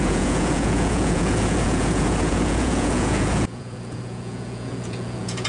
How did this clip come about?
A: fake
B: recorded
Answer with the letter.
A